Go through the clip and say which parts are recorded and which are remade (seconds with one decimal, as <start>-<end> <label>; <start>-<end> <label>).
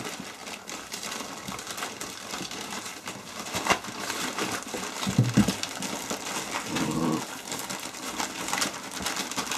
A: 0.0-9.6 recorded